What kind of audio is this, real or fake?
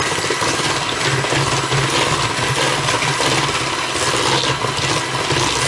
real